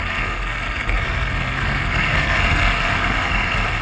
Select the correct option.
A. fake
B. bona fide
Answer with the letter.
A